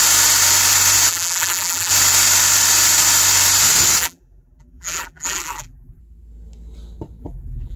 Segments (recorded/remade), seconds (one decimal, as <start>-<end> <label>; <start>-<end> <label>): 0.0-1.1 recorded; 1.1-1.9 remade; 1.9-4.0 recorded; 4.0-6.0 remade; 6.0-7.2 recorded; 7.2-7.8 remade